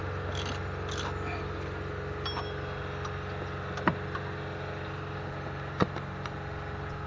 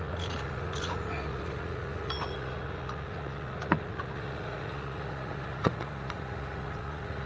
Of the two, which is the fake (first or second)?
second